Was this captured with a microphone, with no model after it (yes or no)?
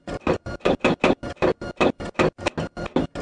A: yes